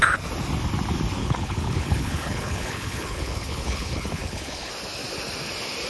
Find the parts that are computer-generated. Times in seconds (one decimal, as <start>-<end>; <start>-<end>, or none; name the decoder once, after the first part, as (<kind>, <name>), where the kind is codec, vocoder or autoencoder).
1.2-4.7 (codec, HILCodec)